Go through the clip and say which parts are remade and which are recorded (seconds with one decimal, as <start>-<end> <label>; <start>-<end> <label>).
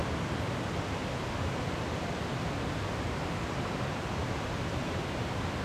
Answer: 0.0-5.6 recorded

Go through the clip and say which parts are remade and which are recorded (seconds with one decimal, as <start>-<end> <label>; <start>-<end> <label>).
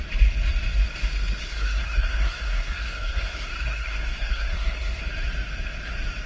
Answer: 0.0-1.4 recorded; 1.4-5.0 remade; 5.0-6.3 recorded